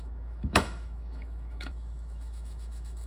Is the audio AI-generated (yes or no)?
yes